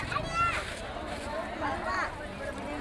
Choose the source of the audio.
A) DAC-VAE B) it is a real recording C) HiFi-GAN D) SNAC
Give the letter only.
B